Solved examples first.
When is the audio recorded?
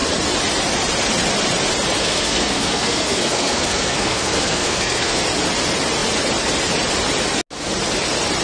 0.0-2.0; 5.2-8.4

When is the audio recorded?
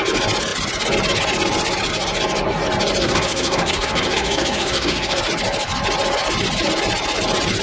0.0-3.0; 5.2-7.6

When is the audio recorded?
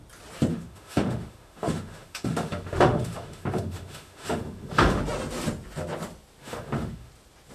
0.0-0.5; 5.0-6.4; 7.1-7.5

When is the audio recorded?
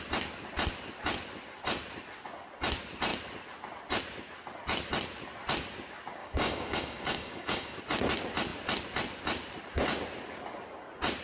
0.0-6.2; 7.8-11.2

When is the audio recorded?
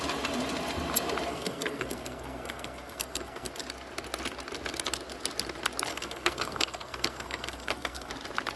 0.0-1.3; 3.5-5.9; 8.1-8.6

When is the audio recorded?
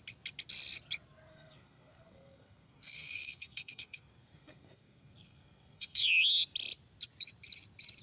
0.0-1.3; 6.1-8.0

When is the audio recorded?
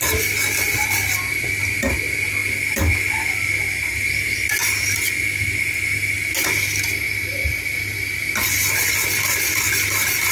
0.0-10.3